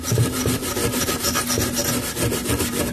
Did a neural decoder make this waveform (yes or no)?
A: no